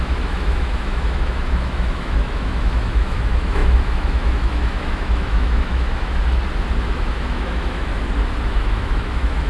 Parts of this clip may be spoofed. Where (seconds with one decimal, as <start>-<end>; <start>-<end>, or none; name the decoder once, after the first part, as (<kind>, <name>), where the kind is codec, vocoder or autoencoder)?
0.0-6.2 (autoencoder, DAC-VAE); 6.9-7.9; 8.4-9.5